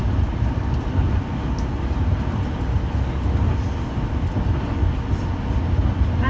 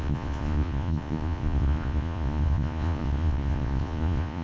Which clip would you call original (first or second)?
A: first